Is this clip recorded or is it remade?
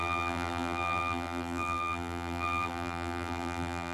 remade